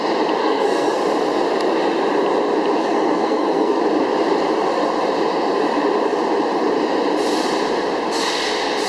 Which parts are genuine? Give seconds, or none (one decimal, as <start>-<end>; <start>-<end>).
0.0-0.4; 1.0-2.8; 3.8-8.9